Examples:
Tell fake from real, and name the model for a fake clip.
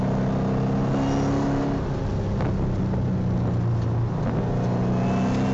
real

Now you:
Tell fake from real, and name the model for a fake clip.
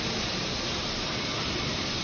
real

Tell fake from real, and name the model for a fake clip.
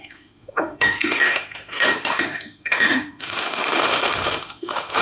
fake, autoencoder, DAC-VAE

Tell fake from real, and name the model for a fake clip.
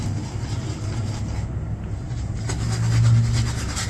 real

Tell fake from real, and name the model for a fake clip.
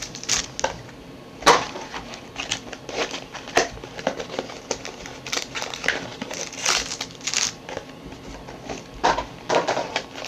real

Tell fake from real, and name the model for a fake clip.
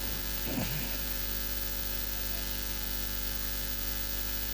real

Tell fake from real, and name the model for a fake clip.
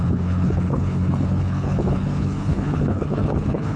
fake, codec, HILCodec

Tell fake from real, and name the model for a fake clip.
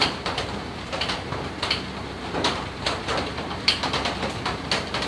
fake, vocoder, BigVGAN v2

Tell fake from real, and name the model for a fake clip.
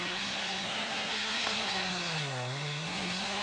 fake, codec, SNAC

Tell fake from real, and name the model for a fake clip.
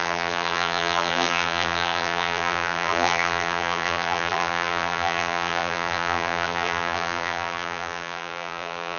fake, vocoder, BigVGAN v2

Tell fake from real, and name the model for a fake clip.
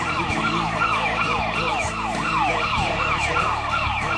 fake, codec, DAC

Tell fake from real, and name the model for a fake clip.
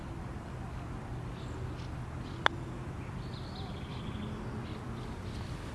real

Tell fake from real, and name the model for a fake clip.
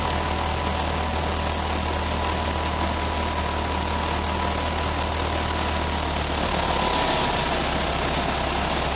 real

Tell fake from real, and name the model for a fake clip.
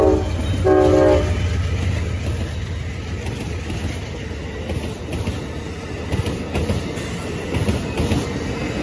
real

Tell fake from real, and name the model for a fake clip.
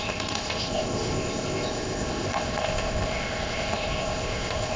fake, codec, ZipCodec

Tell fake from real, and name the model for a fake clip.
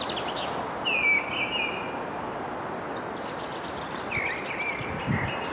real